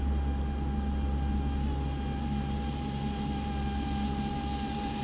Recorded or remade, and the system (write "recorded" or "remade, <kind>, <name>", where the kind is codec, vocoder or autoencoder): recorded